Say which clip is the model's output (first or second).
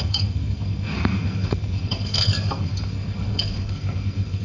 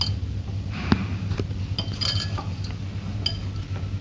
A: first